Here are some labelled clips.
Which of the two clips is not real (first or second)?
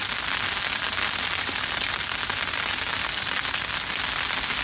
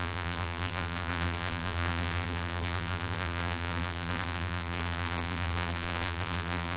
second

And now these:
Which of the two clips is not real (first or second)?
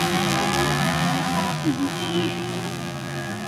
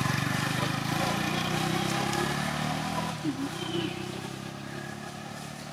first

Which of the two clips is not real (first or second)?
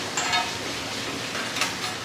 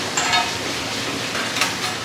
second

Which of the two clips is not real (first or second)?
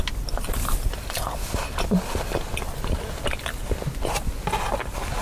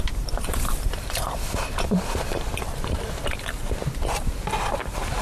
second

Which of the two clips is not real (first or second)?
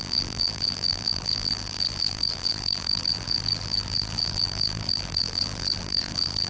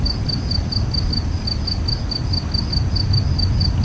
first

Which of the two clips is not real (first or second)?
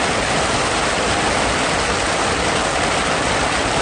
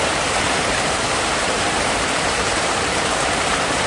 second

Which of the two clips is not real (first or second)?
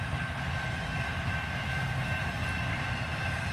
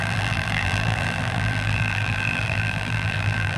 second